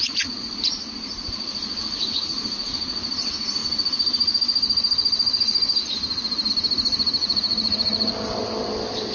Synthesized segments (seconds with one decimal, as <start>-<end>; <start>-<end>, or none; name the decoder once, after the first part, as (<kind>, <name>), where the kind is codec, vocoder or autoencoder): 0.0-0.5 (vocoder, Vocos); 7.2-8.1